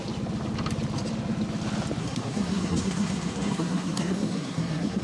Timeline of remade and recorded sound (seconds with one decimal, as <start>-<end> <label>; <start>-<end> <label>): 0.0-2.0 recorded; 2.0-5.0 remade